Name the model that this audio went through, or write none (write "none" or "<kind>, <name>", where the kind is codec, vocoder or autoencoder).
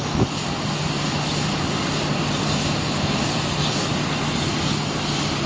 none